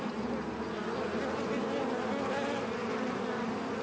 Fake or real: real